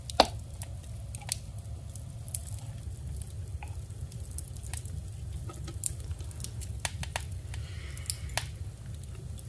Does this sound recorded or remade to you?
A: recorded